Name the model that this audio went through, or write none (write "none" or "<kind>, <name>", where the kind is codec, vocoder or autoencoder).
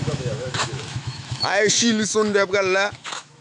autoencoder, DAC-VAE